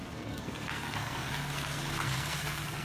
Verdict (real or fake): fake